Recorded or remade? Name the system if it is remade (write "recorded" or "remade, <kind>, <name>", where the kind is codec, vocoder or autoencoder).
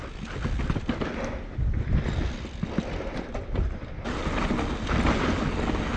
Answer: recorded